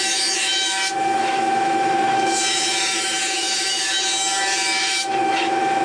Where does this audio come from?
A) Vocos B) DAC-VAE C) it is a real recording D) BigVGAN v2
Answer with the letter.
B